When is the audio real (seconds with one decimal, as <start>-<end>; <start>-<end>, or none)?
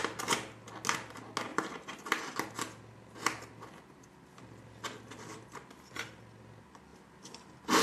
0.0-7.8